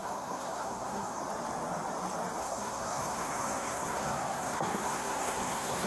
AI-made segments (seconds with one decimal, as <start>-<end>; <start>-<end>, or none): 0.0-1.2; 2.4-5.9